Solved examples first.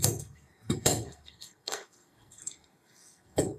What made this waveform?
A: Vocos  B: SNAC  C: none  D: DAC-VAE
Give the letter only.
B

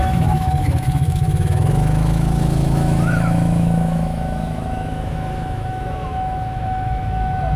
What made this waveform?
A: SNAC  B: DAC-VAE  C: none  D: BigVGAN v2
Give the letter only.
B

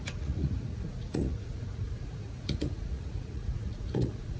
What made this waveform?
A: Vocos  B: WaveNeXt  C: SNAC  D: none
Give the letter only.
A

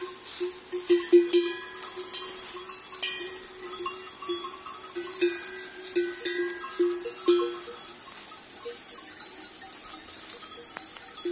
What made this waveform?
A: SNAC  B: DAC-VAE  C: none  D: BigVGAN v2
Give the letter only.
C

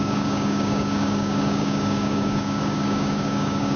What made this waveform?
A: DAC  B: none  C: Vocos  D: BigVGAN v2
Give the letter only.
A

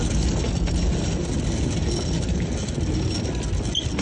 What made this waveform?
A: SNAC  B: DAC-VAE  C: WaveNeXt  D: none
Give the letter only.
D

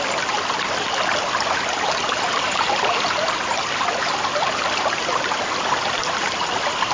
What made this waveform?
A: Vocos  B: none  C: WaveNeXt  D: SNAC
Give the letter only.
B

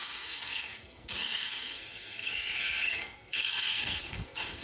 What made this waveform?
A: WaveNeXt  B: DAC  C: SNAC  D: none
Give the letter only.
C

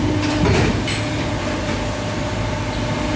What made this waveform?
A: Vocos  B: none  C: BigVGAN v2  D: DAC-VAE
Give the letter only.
C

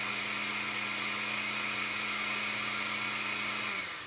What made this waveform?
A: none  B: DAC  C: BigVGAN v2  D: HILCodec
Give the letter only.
A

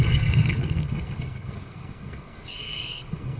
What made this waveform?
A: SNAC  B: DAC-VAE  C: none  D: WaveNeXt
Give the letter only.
A